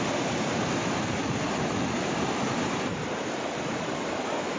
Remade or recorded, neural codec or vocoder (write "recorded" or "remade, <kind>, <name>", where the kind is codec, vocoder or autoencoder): recorded